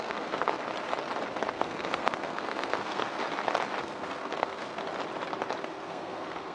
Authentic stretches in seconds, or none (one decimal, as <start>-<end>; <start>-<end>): 0.6-1.5; 3.2-3.8; 4.8-5.6